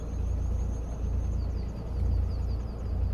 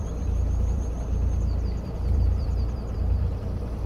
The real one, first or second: first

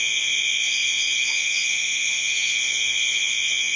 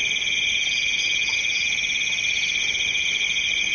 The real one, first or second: second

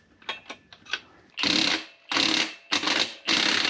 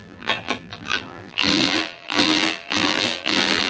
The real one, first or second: first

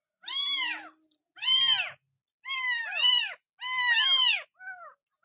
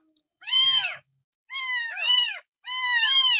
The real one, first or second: first